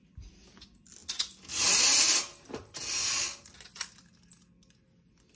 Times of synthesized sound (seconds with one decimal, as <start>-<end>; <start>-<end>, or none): none